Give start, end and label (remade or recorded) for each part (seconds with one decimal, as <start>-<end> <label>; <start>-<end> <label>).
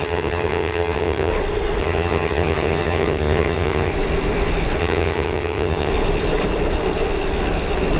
0.0-1.3 remade; 1.3-1.8 recorded; 1.8-3.9 remade; 3.9-4.8 recorded; 4.8-5.9 remade; 5.9-8.0 recorded